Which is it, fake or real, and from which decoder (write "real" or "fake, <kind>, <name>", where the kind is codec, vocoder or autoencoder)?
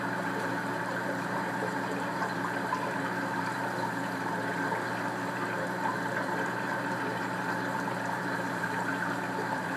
fake, vocoder, BigVGAN v2